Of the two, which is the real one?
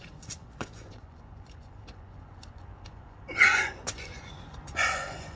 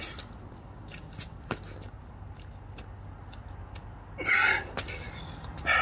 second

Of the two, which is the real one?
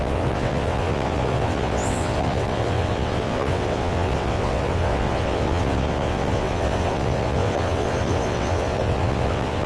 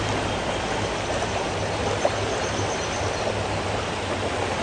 second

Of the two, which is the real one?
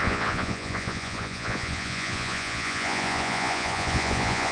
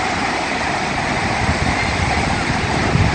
second